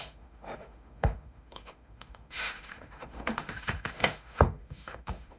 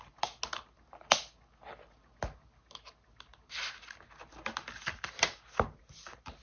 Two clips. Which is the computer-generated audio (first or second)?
first